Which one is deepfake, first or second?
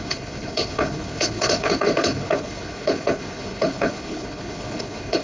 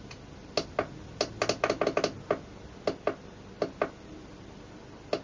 first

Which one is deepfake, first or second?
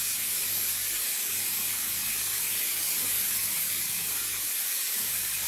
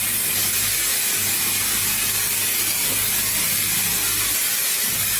first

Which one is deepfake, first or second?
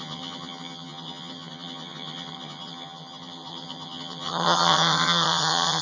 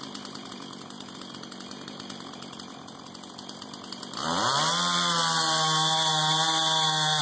first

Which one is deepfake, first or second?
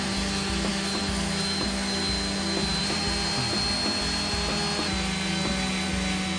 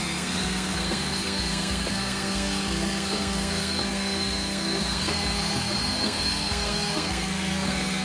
second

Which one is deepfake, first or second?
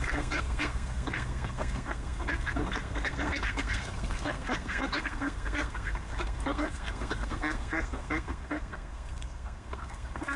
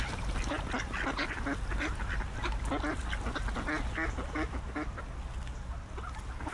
first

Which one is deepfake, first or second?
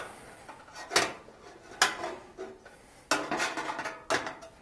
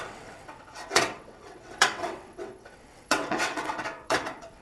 second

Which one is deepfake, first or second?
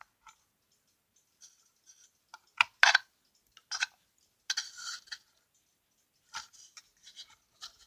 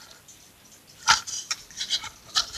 second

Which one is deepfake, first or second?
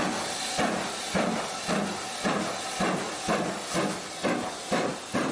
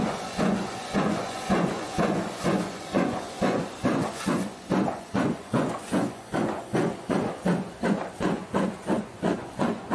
second